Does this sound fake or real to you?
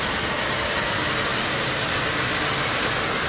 real